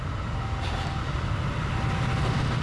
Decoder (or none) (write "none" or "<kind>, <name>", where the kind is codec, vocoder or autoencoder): none